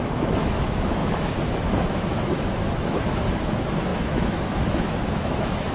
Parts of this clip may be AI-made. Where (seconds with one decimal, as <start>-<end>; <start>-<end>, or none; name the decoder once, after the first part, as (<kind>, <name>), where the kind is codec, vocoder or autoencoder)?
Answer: 0.0-5.7 (autoencoder, DAC-VAE)